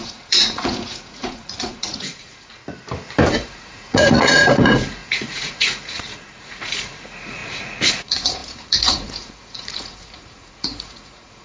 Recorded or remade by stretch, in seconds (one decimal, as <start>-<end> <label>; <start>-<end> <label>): 0.0-2.6 remade; 2.6-3.3 recorded; 3.3-11.4 remade